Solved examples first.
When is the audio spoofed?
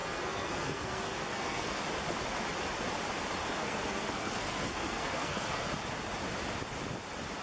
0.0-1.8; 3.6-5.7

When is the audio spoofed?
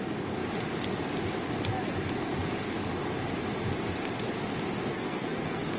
4.9-5.8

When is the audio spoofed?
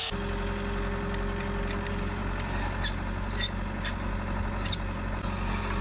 none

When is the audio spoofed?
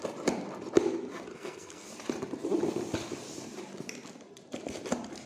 1.3-1.9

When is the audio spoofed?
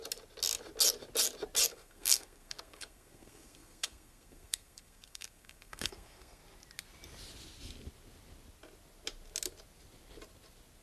1.7-6.4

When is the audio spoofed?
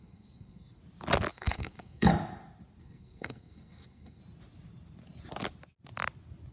0.0-0.8; 1.3-2.1; 2.8-4.2